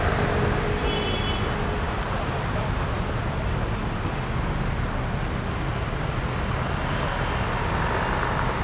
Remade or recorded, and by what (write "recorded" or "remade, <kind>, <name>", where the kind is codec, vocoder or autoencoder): recorded